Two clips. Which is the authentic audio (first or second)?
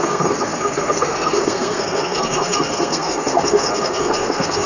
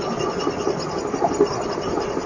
second